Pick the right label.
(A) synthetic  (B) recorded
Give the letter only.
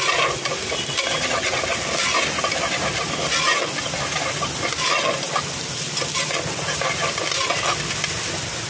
B